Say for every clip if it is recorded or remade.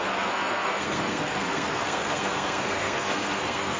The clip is remade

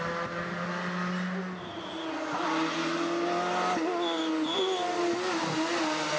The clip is recorded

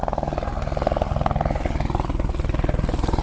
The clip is remade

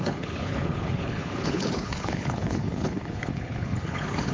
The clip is remade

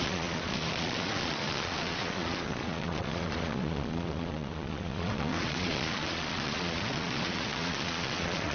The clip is remade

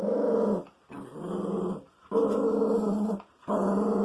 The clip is recorded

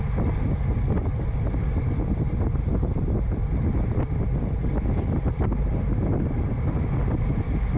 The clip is recorded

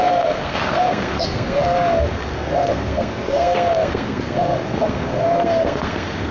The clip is remade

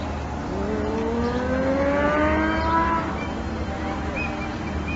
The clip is recorded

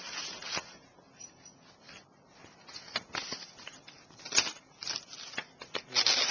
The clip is recorded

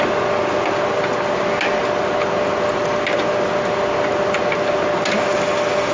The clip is recorded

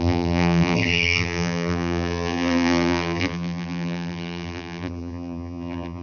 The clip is remade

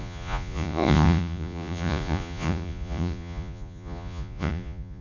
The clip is remade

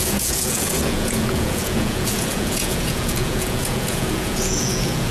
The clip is remade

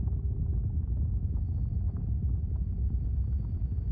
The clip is recorded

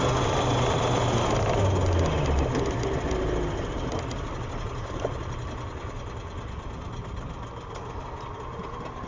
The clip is recorded